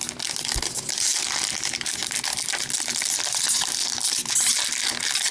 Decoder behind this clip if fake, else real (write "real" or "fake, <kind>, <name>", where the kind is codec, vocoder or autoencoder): real